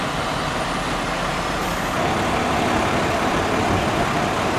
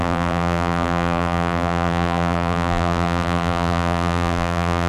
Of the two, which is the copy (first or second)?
second